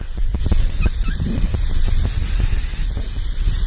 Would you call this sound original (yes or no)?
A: yes